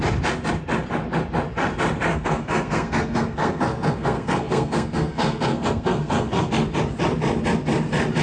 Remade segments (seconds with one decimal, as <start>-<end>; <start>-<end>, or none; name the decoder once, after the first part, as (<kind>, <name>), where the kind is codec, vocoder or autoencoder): 2.1-6.5 (codec, SNAC)